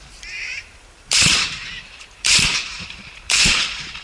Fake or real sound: fake